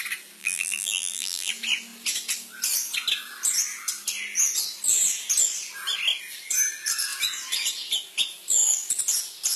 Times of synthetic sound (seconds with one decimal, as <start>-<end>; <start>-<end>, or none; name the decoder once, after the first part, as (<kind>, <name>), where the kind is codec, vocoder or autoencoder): 0.4-1.5 (vocoder, BigVGAN v2)